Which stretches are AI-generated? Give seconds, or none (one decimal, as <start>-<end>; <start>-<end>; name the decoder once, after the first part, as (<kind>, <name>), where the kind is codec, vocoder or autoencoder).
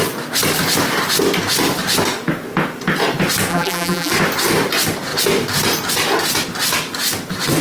3.5-4.1 (vocoder, BigVGAN v2)